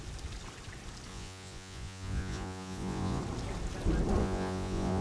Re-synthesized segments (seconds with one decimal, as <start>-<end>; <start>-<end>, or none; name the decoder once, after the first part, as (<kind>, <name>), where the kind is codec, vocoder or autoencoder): 1.1-3.2 (vocoder, Vocos); 4.2-5.0